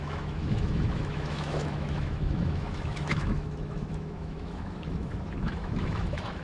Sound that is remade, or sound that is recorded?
remade